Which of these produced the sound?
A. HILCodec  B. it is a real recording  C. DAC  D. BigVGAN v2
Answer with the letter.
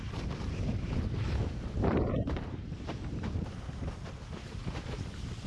D